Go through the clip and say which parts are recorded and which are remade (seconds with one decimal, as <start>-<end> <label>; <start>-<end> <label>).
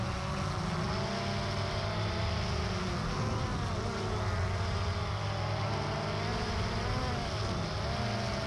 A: 0.0-8.5 recorded